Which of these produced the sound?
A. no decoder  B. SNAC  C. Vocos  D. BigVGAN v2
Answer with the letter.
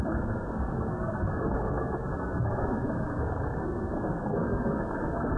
B